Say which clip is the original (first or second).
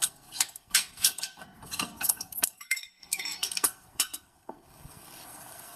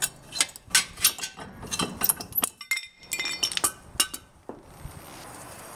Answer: second